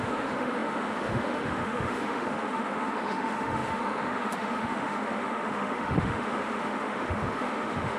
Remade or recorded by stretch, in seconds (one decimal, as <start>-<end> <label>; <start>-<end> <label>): 0.0-8.0 remade